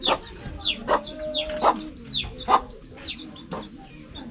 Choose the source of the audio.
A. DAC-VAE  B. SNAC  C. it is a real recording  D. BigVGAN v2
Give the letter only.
C